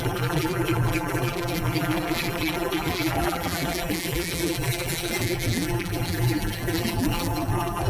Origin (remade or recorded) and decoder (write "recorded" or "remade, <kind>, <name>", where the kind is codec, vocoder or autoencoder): remade, vocoder, BigVGAN v2